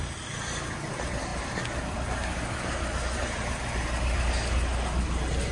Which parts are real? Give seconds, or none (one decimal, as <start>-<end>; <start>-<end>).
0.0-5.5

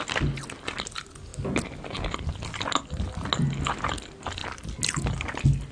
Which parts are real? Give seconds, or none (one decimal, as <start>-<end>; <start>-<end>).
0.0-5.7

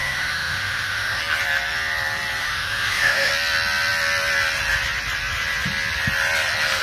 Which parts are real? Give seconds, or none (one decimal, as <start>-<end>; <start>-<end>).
1.2-2.4; 3.3-6.8

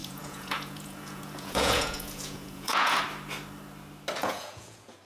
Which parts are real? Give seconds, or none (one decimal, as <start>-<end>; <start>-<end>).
3.0-4.2

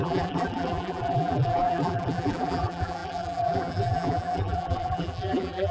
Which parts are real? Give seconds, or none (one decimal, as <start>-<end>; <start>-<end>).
none

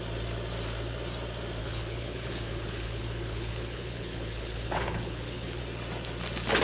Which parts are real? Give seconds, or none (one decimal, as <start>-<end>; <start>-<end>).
0.0-1.6; 5.6-6.6

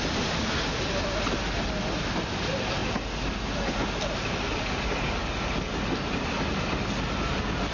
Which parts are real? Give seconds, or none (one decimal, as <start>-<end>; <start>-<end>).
0.0-7.7